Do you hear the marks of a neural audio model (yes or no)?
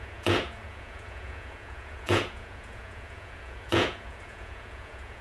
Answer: yes